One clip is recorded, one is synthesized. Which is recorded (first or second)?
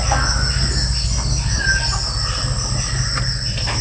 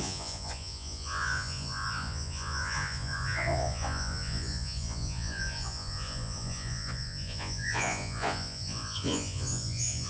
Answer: first